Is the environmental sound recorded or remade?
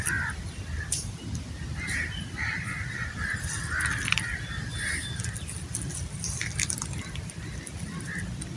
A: recorded